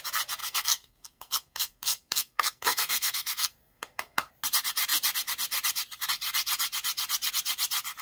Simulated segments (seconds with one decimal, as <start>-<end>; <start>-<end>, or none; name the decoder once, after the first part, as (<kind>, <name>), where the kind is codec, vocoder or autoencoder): 0.4-4.3 (codec, SNAC)